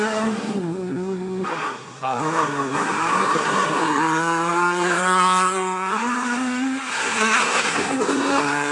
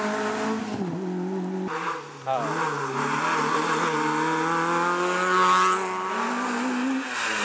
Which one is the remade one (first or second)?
first